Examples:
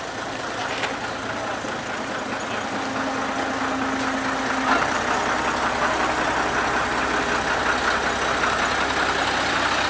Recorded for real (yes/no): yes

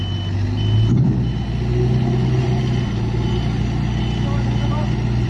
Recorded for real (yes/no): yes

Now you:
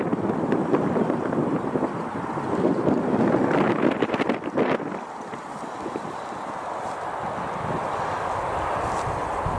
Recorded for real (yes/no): yes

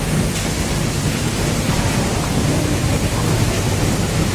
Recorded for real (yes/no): yes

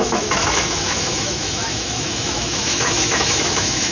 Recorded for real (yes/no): no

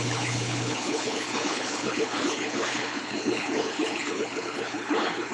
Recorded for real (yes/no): no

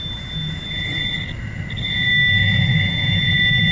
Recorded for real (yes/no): yes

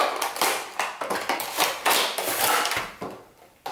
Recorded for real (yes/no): yes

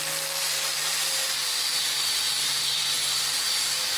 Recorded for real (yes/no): no